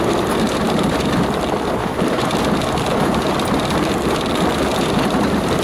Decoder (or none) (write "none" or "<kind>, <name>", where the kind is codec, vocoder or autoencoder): vocoder, BigVGAN v2